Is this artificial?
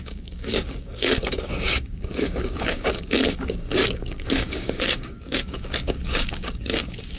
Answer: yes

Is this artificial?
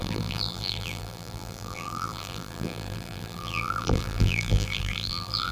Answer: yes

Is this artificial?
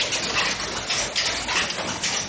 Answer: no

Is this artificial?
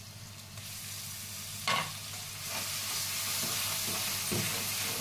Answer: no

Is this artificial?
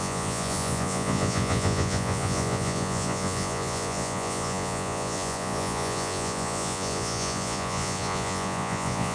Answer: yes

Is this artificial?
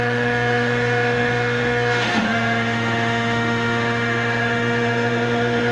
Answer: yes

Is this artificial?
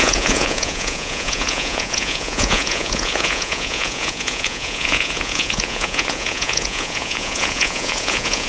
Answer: yes